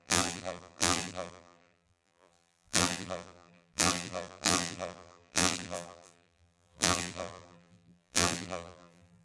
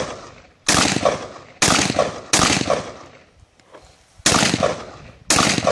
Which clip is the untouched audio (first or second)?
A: second